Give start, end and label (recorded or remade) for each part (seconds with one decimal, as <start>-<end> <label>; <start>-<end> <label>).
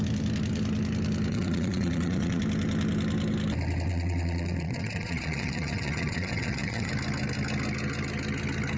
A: 0.0-1.3 recorded; 1.3-2.4 remade; 2.4-3.9 recorded; 3.9-6.9 remade; 6.9-8.8 recorded